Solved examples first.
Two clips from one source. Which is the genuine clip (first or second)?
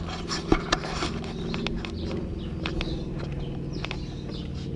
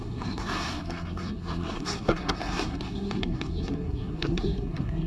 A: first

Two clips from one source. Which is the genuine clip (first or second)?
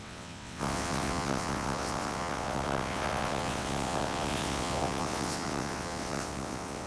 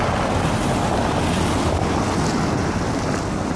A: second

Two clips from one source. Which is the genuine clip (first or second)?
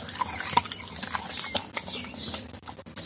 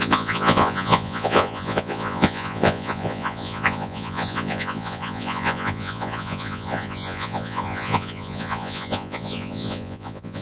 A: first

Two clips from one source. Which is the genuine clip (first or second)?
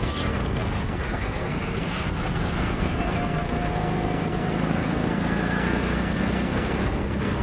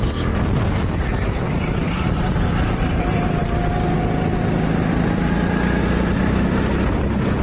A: second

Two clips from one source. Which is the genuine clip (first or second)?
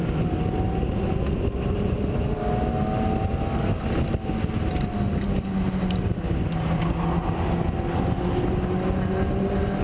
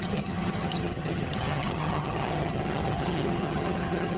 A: first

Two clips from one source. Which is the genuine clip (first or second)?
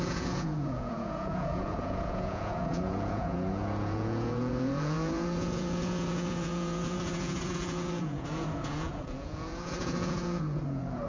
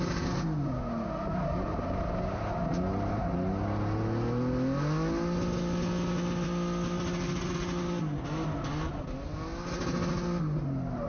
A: second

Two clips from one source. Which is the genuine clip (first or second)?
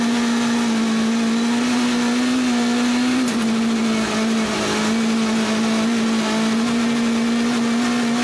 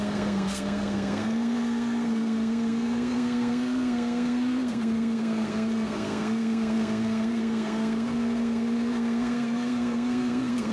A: first